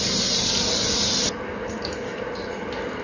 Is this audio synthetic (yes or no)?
no